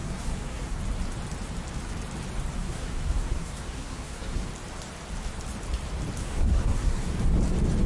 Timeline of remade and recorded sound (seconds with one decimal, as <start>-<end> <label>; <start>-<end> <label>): 0.0-0.8 remade; 0.8-2.6 recorded; 2.6-4.5 remade; 4.5-6.2 recorded; 6.2-7.2 remade; 7.2-7.9 recorded